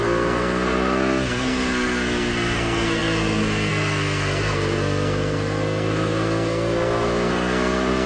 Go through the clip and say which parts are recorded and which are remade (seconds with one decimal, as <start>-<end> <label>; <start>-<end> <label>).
0.0-8.1 remade